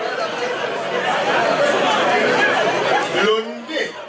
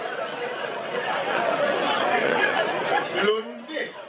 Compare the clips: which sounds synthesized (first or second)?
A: second